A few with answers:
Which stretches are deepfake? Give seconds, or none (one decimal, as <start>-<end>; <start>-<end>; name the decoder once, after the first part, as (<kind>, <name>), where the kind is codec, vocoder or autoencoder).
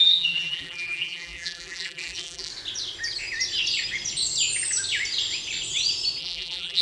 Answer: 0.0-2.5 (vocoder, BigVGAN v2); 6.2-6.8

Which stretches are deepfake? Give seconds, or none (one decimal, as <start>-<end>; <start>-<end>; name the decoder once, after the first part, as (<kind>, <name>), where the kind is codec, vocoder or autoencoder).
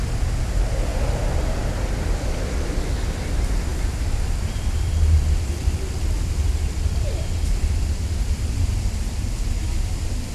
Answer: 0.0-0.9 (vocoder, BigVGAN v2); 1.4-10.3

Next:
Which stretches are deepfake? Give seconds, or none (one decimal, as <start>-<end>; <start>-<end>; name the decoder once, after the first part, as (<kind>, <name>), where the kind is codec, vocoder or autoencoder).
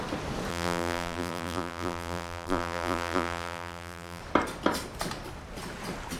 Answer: 0.5-4.2 (vocoder, BigVGAN v2)